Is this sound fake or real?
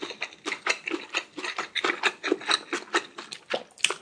real